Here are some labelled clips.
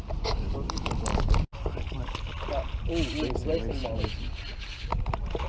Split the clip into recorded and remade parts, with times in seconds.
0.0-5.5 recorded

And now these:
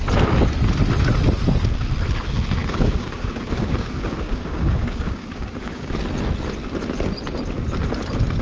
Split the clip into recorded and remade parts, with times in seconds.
0.0-2.6 recorded; 2.6-5.9 remade; 5.9-8.4 recorded

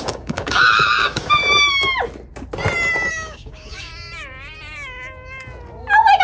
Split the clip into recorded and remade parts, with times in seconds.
0.0-1.4 remade; 1.4-3.1 recorded; 3.1-3.9 remade; 3.9-6.2 recorded

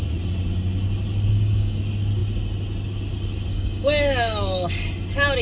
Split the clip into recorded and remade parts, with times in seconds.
0.0-1.3 recorded; 1.3-1.8 remade; 1.8-3.5 recorded; 3.5-4.7 remade; 4.7-5.4 recorded

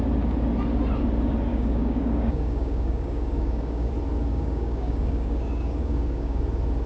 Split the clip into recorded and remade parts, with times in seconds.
0.0-1.5 recorded; 1.5-3.9 remade; 3.9-4.3 recorded; 4.3-6.4 remade; 6.4-6.9 recorded